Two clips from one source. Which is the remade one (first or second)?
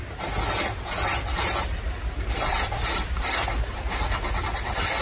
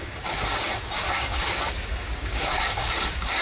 second